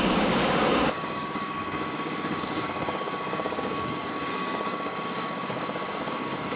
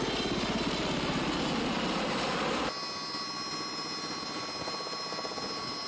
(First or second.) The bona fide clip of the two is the second